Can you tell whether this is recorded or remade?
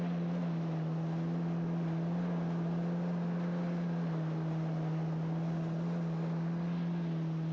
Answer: recorded